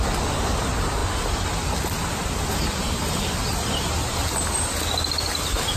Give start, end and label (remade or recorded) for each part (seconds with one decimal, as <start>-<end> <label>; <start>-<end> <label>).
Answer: 0.0-5.8 recorded